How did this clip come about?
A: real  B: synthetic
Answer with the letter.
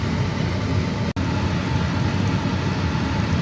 A